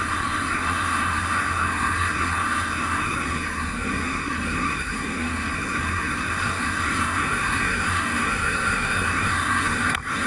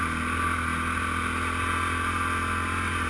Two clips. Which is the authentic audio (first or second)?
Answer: second